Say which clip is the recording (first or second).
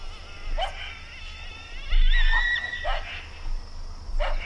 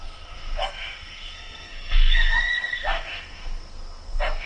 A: first